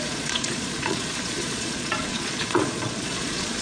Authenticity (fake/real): fake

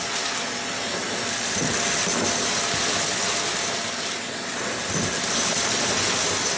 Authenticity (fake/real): real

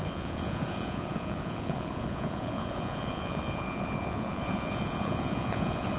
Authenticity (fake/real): fake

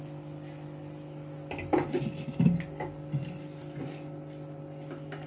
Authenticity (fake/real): real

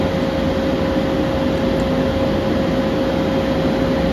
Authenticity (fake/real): real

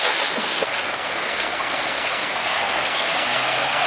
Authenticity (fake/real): fake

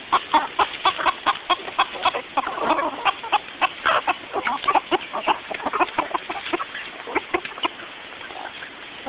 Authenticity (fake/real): real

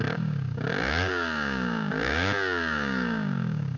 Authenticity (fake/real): fake